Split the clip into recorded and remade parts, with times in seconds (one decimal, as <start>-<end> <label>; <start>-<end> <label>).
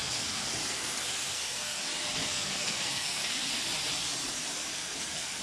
0.0-1.8 remade; 1.8-2.2 recorded; 2.2-3.5 remade; 3.5-4.6 recorded; 4.6-5.4 remade